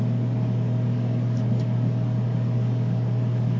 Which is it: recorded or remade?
remade